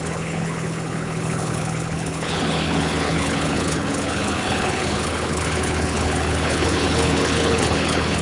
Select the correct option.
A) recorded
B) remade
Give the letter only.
B